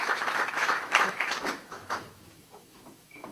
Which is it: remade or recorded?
remade